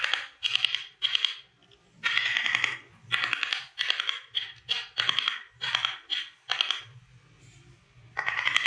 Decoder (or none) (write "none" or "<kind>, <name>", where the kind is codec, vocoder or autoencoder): none